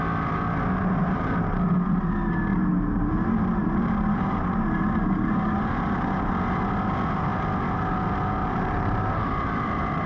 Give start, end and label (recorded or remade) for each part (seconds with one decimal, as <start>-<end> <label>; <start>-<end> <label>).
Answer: 0.0-1.0 recorded; 1.0-1.6 remade; 1.6-2.5 recorded; 2.5-6.3 remade; 6.3-8.4 recorded; 8.4-9.3 remade; 9.3-10.1 recorded